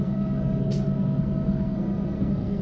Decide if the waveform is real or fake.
fake